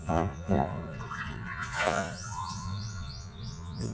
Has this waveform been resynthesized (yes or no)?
yes